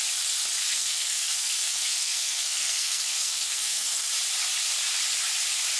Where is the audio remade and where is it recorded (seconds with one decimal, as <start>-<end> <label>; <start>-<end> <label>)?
0.0-0.6 recorded; 0.6-4.1 remade; 4.1-5.8 recorded